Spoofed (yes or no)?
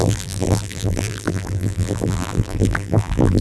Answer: yes